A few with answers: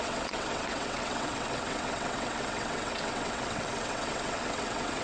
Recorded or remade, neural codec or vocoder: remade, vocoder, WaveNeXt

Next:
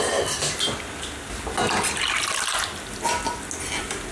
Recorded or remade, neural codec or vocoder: recorded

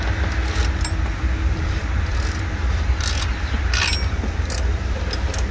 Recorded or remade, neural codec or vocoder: recorded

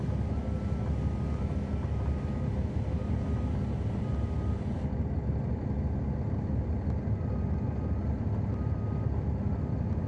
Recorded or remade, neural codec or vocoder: recorded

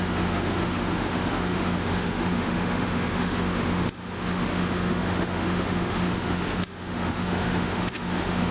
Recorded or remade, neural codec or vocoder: remade, autoencoder, DAC-VAE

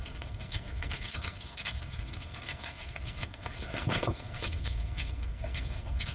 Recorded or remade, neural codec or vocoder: remade, codec, SNAC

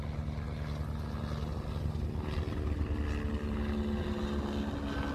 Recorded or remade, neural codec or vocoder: recorded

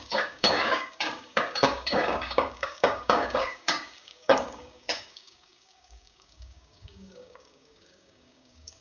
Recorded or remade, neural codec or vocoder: remade, codec, DAC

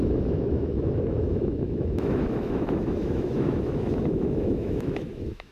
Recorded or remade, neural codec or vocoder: remade, autoencoder, DAC-VAE